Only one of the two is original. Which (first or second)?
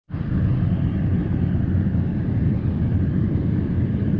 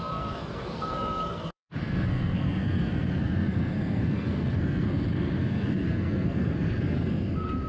first